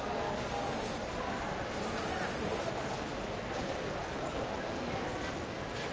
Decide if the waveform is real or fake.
real